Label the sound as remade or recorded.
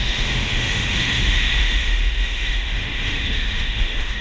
remade